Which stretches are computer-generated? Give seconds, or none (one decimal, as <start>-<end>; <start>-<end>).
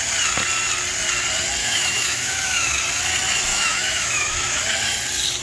1.6-2.8; 3.5-4.6